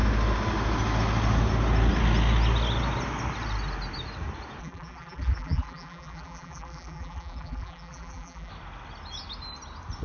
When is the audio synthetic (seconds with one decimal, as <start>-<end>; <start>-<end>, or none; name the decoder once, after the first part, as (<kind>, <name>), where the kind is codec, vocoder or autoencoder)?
4.6-8.5 (vocoder, BigVGAN v2)